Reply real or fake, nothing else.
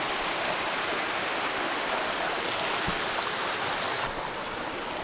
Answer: real